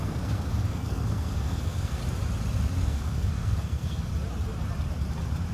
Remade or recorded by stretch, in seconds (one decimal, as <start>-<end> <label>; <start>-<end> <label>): 0.0-2.0 remade; 2.0-2.8 recorded; 2.8-4.1 remade; 4.1-5.5 recorded